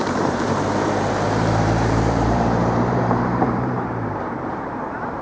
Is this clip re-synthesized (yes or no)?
yes